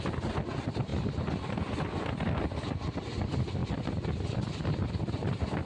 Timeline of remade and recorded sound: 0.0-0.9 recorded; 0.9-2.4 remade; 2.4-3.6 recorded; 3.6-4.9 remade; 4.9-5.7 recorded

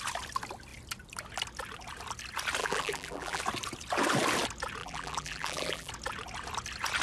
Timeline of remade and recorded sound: 0.0-2.6 recorded; 2.6-3.4 remade; 3.4-4.8 recorded; 4.8-5.9 remade; 5.9-7.0 recorded

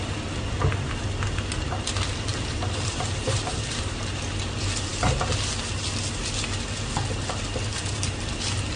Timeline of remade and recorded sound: 0.0-2.3 recorded; 2.3-4.2 remade; 4.2-7.7 recorded; 7.7-8.8 remade